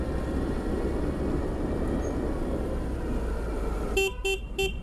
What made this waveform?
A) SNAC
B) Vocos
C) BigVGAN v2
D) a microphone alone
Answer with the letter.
D